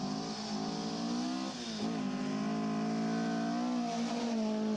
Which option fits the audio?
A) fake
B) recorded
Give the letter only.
B